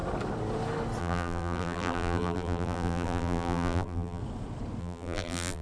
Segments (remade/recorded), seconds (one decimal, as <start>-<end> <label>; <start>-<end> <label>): 0.0-1.0 recorded; 1.0-4.2 remade; 4.2-4.8 recorded; 4.8-5.6 remade